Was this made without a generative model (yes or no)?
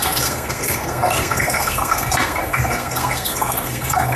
no